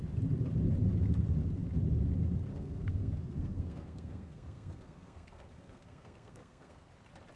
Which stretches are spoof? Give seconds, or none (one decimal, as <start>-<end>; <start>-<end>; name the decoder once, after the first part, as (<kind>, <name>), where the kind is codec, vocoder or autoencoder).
2.5-6.9 (codec, SNAC)